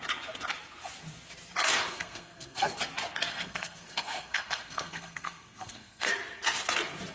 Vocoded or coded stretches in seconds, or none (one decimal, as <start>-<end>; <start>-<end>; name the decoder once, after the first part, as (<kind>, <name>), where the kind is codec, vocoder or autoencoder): 1.9-2.8 (codec, SNAC); 3.3-6.1